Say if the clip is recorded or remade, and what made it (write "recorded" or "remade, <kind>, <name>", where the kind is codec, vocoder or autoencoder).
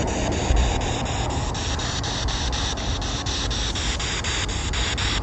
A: recorded